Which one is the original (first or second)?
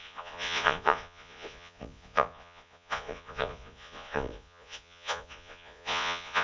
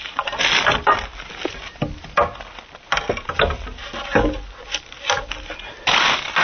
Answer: second